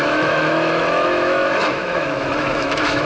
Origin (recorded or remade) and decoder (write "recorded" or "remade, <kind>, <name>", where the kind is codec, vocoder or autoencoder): remade, autoencoder, DAC-VAE